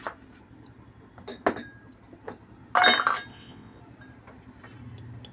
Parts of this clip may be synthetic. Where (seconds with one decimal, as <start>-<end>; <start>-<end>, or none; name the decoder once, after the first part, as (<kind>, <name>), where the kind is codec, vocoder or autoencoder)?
3.3-3.8 (vocoder, WaveNeXt)